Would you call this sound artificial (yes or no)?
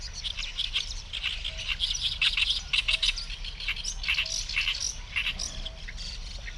no